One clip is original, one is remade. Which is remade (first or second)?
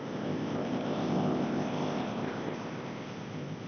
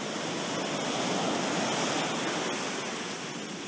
first